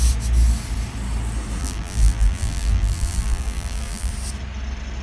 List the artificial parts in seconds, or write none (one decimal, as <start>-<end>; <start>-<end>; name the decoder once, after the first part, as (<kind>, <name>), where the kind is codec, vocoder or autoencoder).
1.6-4.1 (vocoder, BigVGAN v2)